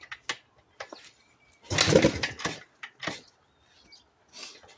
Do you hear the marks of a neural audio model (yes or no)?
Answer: no